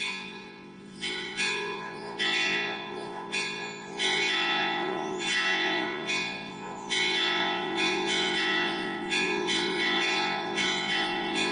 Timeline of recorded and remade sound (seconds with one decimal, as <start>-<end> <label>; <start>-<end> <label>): 0.0-11.5 remade